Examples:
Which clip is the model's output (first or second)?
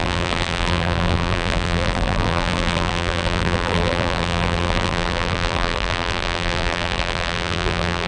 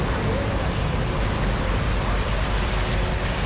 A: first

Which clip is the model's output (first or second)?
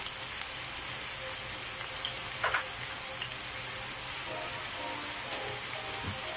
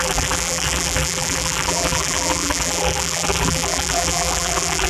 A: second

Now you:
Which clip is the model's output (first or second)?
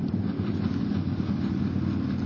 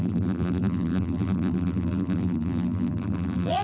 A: second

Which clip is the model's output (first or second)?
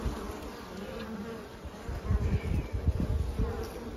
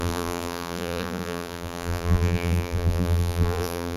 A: second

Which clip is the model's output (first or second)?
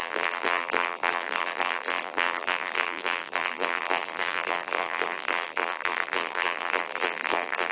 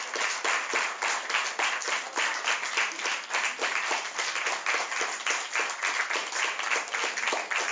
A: first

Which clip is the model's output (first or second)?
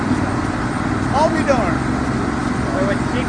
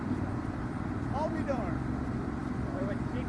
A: second